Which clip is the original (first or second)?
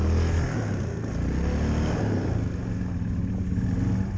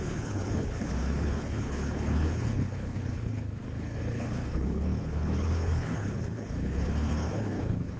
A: first